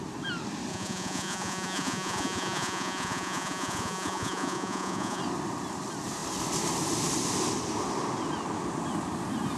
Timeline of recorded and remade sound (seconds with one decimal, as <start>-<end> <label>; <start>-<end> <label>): 0.0-0.7 recorded; 0.7-5.2 remade; 5.2-9.6 recorded